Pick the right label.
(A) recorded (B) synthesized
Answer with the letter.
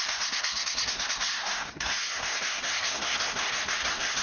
B